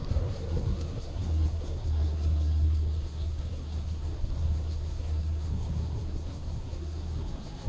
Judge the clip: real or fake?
fake